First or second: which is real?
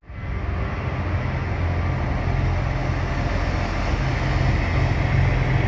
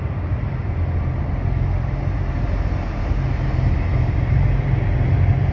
first